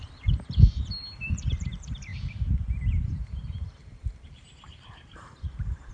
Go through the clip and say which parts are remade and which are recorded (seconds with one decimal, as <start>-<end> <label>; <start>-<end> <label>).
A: 0.0-5.9 remade